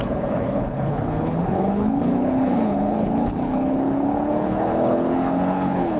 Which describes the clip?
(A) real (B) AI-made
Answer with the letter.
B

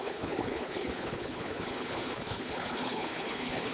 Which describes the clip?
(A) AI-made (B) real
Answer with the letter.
A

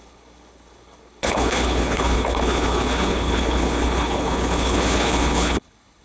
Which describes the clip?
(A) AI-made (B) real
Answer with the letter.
A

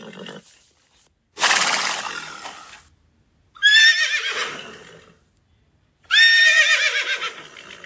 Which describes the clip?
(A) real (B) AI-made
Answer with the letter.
A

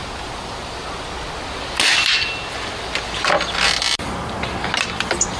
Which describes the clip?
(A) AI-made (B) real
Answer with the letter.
B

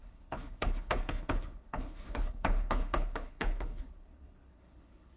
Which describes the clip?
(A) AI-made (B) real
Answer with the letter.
A